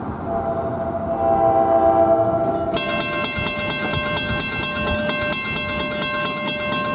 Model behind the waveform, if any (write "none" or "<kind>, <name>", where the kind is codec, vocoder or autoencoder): none